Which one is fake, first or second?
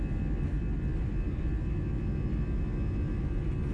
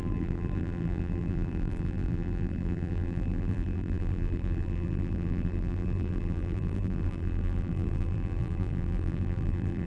second